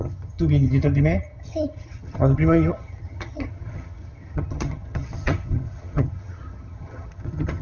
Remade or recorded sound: remade